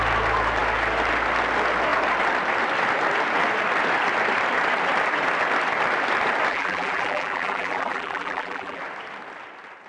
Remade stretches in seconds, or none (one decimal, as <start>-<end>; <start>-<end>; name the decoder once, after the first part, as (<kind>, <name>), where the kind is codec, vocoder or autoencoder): 6.5-8.8 (vocoder, BigVGAN v2)